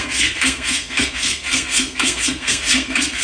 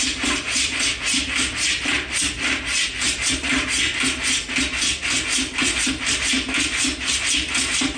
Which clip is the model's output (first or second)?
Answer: first